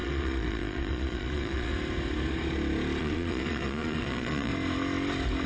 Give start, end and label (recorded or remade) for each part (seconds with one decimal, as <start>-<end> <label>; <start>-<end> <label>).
0.0-1.7 remade; 1.7-3.0 recorded; 3.0-4.5 remade; 4.5-5.5 recorded